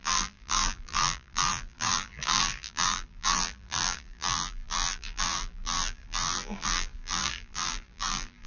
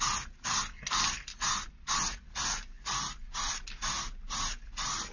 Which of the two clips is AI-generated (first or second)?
first